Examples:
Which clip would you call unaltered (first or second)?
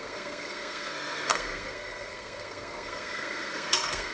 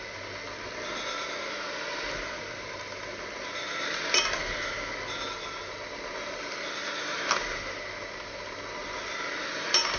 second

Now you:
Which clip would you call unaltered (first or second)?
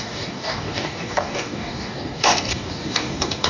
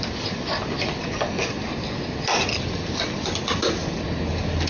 second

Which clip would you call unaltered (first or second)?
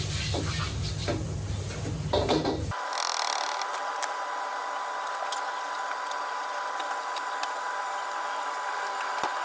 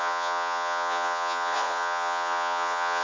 first